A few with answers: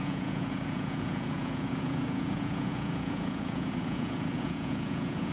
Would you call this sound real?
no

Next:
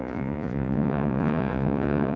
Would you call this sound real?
no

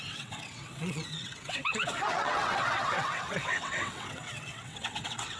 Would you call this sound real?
no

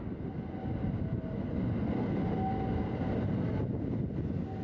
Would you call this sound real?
yes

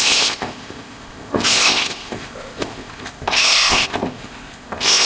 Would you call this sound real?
no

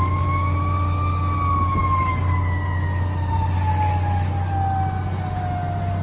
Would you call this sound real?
yes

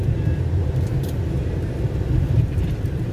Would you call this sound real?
no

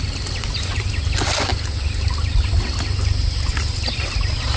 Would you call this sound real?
yes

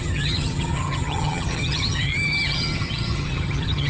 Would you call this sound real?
no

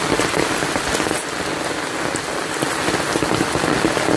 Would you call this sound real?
yes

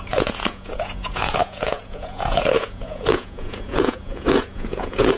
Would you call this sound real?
no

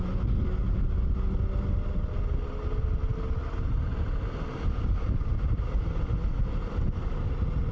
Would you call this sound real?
yes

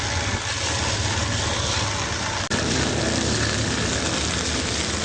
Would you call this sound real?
yes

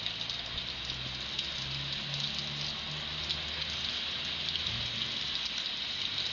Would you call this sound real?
yes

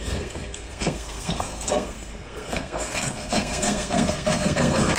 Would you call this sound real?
no